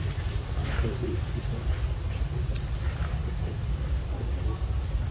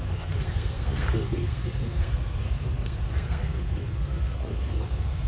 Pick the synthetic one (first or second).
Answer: second